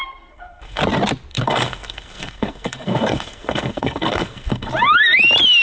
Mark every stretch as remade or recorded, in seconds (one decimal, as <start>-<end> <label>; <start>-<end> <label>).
0.0-0.8 remade; 0.8-1.3 recorded; 1.3-4.7 remade; 4.7-5.6 recorded